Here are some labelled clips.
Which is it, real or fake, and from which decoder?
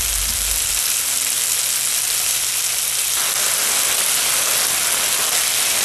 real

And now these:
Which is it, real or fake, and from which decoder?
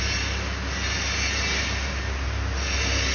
real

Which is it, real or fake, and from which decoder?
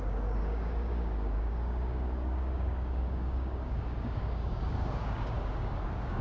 fake, codec, DAC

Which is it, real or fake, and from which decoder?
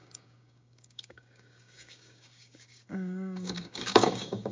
fake, codec, DAC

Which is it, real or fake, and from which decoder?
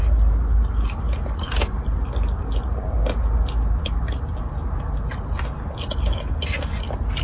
real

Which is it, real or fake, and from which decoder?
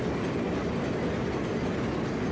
real